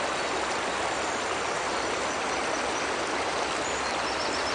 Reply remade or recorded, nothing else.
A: recorded